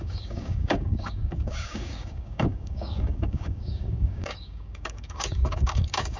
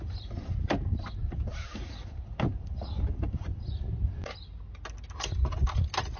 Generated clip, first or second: first